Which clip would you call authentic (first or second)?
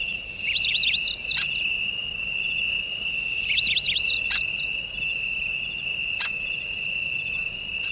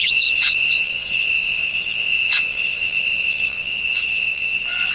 first